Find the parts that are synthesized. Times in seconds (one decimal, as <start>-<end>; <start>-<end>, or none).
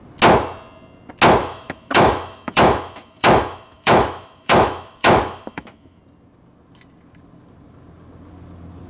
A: 1.4-6.0